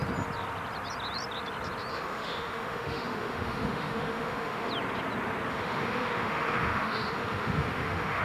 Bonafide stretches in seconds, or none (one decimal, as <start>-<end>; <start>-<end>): 0.0-1.9; 4.7-5.5